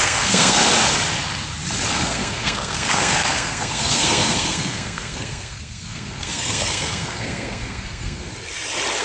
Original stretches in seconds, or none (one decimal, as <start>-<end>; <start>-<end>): 0.6-1.9; 8.3-9.0

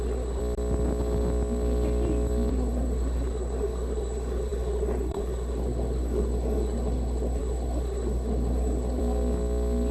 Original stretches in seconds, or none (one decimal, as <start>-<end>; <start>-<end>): 0.4-2.5; 9.0-9.9

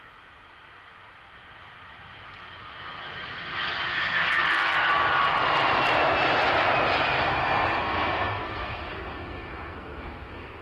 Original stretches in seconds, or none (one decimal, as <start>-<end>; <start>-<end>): 0.0-4.0; 4.9-7.4

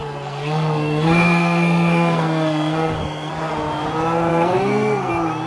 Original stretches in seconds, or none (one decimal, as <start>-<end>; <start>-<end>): 3.3-4.3; 5.1-5.5

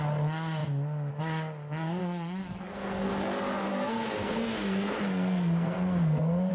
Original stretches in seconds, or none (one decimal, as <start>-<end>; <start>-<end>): 0.0-2.0; 3.1-3.7

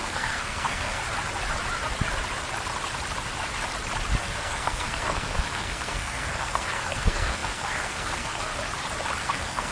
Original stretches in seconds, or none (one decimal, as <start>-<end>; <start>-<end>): 1.0-4.2; 8.5-9.2

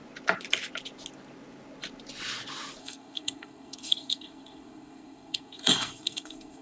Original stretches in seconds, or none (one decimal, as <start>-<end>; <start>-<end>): 0.0-2.8